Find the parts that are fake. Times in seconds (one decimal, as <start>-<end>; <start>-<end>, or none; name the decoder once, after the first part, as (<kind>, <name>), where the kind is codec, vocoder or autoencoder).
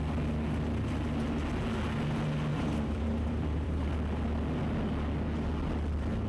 2.5-3.9 (vocoder, BigVGAN v2)